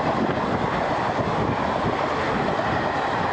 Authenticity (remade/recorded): recorded